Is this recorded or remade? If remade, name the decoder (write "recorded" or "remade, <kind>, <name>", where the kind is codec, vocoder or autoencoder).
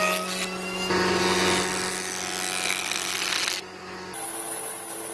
recorded